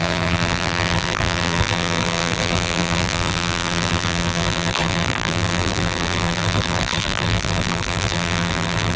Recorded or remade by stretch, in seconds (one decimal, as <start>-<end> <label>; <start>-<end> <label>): 0.0-9.0 remade